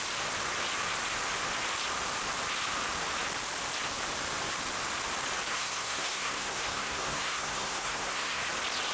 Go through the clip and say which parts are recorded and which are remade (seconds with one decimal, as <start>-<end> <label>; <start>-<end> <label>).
0.0-5.5 recorded; 5.5-8.4 remade; 8.4-8.9 recorded